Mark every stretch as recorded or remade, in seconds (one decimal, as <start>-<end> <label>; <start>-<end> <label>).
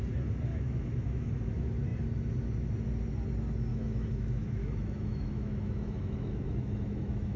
0.0-0.5 recorded; 0.5-1.3 remade; 1.3-3.7 recorded; 3.7-7.4 remade